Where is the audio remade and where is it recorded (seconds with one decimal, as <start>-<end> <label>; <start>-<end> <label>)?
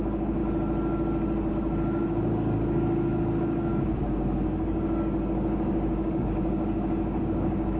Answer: 0.0-0.4 remade; 0.4-1.5 recorded; 1.5-7.8 remade